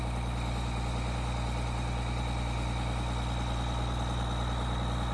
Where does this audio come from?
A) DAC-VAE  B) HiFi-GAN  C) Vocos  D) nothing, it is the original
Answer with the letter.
D